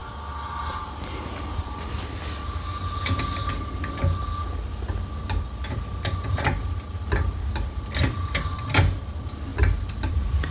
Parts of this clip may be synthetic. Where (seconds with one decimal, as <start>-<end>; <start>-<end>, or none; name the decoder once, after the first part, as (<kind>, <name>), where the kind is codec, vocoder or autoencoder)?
0.7-10.5 (vocoder, BigVGAN v2)